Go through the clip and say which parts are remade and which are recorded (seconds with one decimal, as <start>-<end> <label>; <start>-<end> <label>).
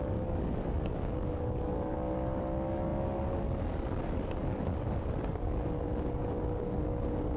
0.0-7.4 remade